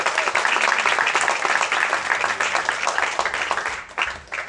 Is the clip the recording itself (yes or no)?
yes